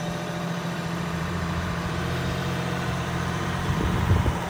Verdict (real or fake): fake